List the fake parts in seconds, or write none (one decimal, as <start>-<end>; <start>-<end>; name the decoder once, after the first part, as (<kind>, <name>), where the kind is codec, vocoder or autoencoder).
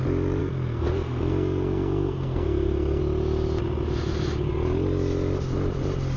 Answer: 0.4-3.0 (codec, SNAC)